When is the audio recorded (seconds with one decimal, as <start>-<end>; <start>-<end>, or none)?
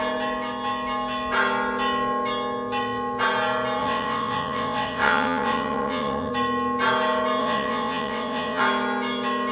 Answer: 0.0-3.8; 6.3-7.4; 8.6-9.5